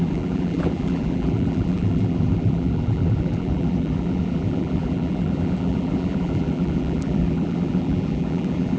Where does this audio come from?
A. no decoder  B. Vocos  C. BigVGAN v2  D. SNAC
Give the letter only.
C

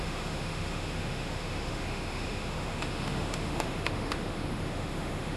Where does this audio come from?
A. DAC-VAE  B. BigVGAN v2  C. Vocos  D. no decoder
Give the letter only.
A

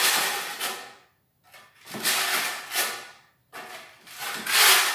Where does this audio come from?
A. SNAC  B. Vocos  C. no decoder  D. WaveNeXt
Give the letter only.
C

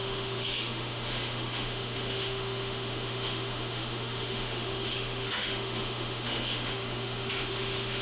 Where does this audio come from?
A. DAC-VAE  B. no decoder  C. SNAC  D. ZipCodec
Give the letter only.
A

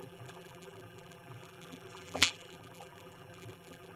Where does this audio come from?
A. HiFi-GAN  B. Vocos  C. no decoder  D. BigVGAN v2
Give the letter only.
D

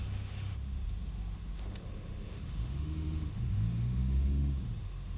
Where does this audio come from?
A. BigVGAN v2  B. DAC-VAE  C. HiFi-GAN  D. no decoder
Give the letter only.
B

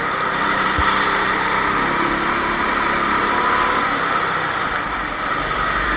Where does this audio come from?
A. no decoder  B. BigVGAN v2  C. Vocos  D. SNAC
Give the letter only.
B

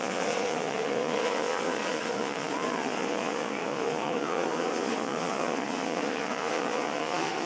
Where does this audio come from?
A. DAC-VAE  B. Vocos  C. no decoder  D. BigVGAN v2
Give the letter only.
B